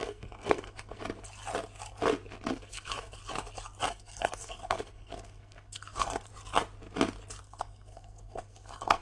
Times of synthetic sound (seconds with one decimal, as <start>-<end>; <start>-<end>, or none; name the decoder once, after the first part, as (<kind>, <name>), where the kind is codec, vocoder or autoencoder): 0.0-1.0 (codec, SNAC); 2.5-3.2; 3.9-6.3; 7.4-9.0